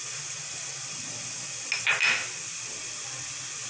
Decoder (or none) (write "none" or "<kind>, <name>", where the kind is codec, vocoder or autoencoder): none